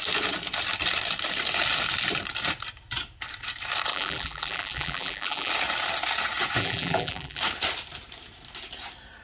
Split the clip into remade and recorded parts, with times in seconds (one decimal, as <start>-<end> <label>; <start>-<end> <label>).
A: 0.0-3.9 recorded; 3.9-5.5 remade; 5.5-6.6 recorded; 6.6-7.4 remade; 7.4-9.2 recorded

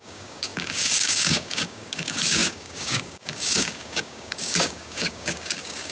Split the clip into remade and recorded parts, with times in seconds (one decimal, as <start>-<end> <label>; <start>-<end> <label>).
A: 0.0-5.9 remade

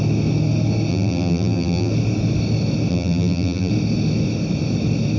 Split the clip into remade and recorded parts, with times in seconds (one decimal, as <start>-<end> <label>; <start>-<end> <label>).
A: 0.0-0.9 recorded; 0.9-1.9 remade; 1.9-2.9 recorded; 2.9-3.7 remade; 3.7-5.2 recorded